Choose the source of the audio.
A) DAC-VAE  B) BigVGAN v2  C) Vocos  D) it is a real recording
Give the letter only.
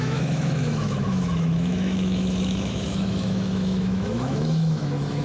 A